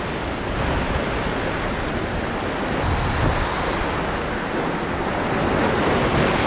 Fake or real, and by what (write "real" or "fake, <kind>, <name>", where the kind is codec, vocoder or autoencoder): real